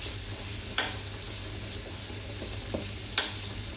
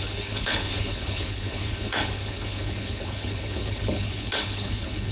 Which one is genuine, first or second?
first